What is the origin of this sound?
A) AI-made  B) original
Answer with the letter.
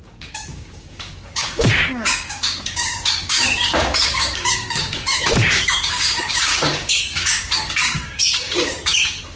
A